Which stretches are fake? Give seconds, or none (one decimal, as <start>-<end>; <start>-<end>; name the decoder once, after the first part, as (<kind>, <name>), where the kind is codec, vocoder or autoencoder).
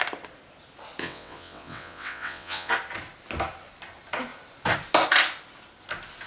1.0-2.7 (vocoder, WaveNeXt)